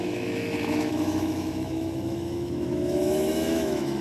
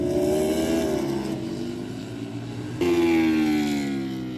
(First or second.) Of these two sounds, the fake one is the first